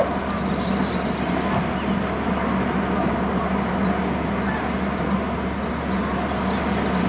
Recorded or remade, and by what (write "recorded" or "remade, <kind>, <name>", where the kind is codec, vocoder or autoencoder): recorded